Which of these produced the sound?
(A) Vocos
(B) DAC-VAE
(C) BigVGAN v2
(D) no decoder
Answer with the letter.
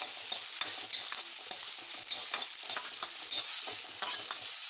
D